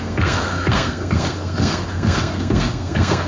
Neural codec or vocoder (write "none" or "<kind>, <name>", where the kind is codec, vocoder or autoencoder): codec, SNAC